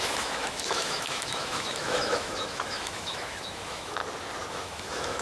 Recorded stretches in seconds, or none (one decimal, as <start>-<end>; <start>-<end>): 4.0-4.5